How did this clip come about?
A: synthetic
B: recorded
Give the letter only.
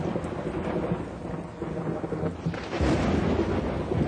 B